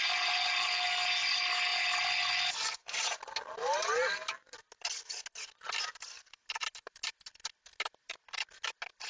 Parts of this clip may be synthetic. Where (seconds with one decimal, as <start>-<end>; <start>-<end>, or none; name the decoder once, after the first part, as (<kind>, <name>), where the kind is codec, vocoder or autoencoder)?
none